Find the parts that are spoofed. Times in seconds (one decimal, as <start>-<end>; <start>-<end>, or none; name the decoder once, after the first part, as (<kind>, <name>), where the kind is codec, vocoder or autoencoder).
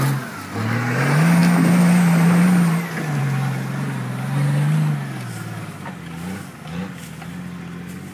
none